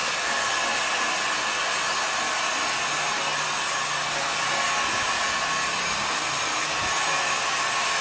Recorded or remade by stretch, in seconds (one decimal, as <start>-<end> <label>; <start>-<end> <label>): 0.0-8.0 recorded